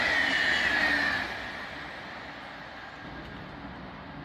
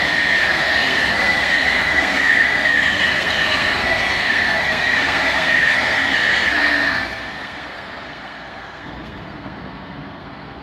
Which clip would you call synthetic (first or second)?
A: second